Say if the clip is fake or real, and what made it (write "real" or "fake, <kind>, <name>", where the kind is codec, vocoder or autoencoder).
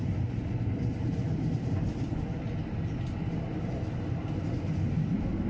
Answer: real